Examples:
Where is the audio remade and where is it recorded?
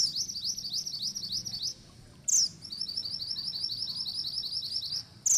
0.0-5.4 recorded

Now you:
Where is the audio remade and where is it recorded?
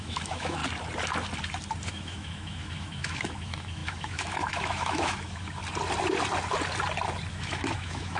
0.0-0.6 remade; 0.6-1.9 recorded; 1.9-5.6 remade; 5.6-7.3 recorded; 7.3-8.2 remade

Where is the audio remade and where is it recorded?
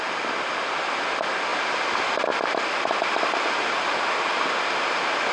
0.0-5.3 recorded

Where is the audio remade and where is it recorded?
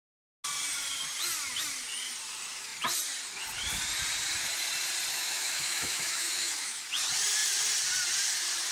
0.0-5.1 recorded; 5.1-6.8 remade; 6.8-8.7 recorded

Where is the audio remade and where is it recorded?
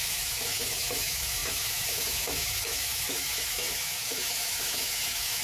0.0-5.4 remade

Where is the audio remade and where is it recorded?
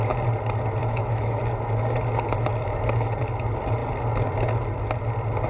0.0-0.8 recorded; 0.8-1.4 remade; 1.4-5.5 recorded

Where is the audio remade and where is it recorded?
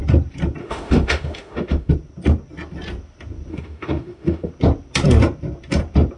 0.0-0.6 recorded; 0.6-1.9 remade; 1.9-3.5 recorded; 3.5-4.5 remade; 4.5-6.2 recorded